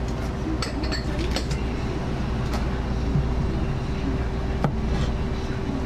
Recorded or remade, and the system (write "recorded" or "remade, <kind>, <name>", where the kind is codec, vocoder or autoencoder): recorded